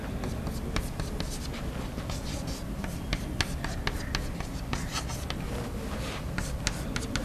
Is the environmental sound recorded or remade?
recorded